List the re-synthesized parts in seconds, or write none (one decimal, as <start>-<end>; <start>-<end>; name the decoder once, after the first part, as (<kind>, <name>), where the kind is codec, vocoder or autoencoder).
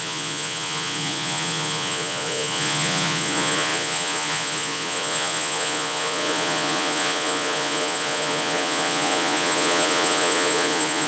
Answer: 0.0-11.1 (vocoder, Vocos)